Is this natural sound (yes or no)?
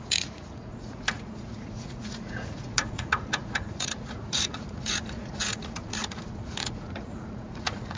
no